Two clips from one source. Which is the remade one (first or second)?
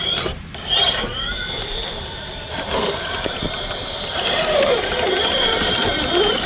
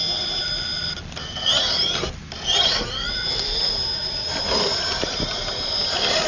first